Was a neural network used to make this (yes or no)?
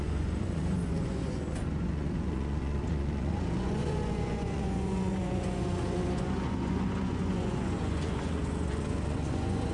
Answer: yes